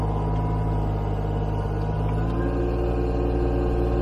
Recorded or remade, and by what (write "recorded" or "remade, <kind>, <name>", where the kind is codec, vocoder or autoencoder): recorded